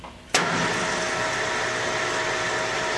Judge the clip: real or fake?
real